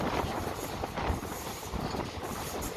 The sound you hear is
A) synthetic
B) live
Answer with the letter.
B